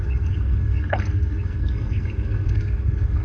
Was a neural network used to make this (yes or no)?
yes